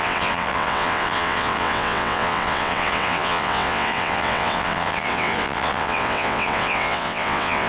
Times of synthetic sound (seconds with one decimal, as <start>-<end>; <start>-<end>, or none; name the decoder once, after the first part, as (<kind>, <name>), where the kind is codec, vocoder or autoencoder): 0.0-7.7 (vocoder, WaveNeXt)